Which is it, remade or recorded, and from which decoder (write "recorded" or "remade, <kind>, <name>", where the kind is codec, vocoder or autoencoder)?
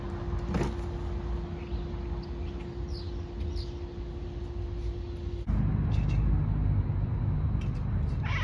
recorded